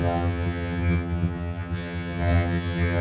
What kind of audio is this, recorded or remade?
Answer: remade